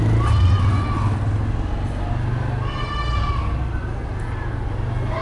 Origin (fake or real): real